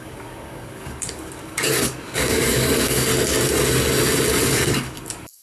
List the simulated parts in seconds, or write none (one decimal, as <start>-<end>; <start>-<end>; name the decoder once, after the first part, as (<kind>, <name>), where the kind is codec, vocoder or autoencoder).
0.0-3.1 (codec, DAC); 4.4-5.4